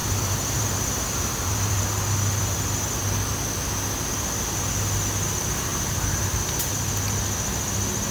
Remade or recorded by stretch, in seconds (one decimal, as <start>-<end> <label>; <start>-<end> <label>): 0.0-1.8 remade; 1.8-5.7 recorded; 5.7-6.7 remade; 6.7-8.1 recorded

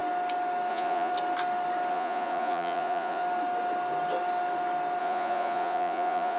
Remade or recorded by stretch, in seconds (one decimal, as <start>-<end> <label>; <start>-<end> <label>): 0.0-0.7 recorded; 0.7-1.1 remade; 1.1-1.9 recorded; 1.9-3.2 remade; 3.2-5.0 recorded; 5.0-6.4 remade

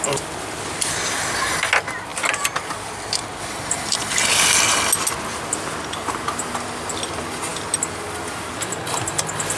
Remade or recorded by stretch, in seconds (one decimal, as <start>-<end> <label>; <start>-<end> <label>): 0.0-9.6 recorded